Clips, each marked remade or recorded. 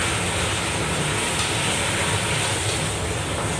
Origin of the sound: recorded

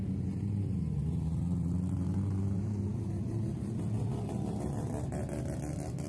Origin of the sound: recorded